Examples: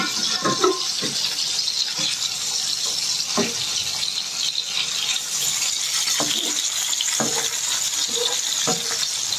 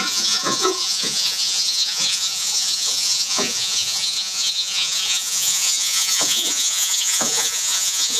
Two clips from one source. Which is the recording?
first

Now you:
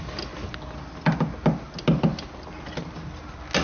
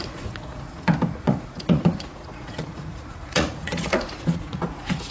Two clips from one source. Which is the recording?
first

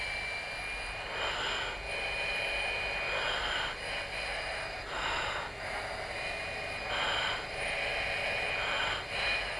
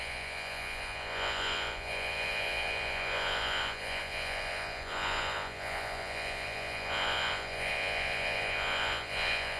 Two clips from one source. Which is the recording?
first